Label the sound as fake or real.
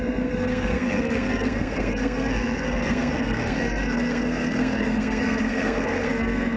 fake